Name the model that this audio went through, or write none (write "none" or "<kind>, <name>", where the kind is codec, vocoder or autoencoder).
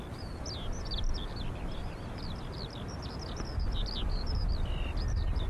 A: none